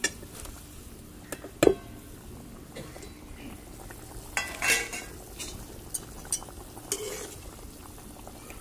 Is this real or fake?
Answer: real